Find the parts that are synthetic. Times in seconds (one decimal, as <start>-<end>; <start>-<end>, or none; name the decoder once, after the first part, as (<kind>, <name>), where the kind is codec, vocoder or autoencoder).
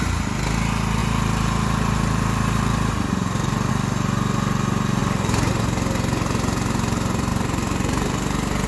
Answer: 1.0-3.7 (vocoder, BigVGAN v2); 5.0-5.5; 7.3-8.7